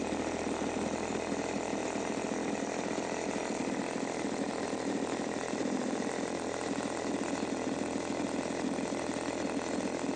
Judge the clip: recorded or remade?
recorded